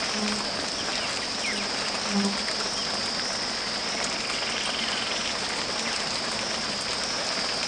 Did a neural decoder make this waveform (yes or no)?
no